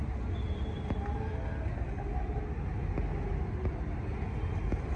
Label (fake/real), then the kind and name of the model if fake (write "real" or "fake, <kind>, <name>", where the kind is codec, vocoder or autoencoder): real